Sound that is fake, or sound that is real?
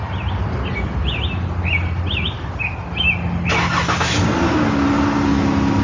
real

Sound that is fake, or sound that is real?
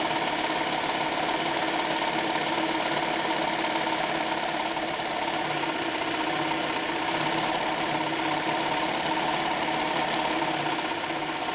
real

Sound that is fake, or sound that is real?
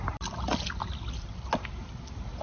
real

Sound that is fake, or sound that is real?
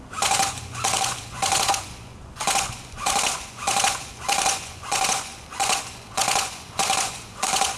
fake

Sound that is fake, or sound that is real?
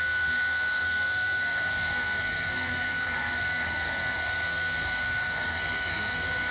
fake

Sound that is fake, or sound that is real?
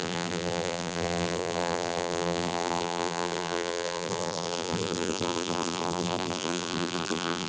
fake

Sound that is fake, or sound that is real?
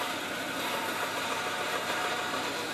fake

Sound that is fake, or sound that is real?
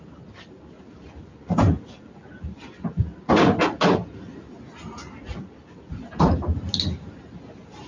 real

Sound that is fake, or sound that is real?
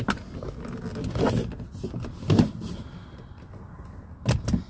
real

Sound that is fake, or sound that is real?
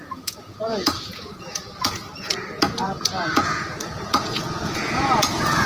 fake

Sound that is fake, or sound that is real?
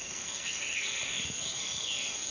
fake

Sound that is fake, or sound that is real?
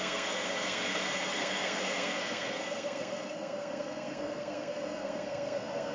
fake